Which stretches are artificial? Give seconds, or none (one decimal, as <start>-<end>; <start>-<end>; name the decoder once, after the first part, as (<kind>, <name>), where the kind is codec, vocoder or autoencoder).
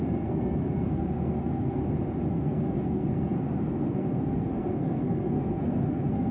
0.0-1.8 (codec, SNAC); 2.3-6.3